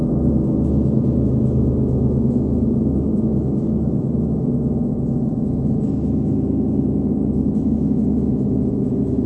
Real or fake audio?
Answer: fake